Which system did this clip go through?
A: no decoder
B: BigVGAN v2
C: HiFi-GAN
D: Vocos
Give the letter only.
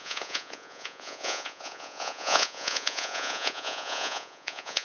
D